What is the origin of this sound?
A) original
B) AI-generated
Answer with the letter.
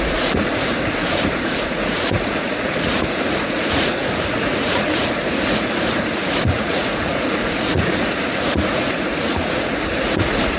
B